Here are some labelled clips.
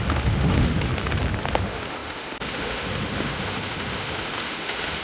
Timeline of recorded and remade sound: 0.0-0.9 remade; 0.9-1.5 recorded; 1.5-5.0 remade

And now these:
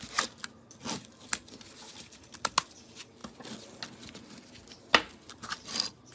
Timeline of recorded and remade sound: 0.0-6.1 recorded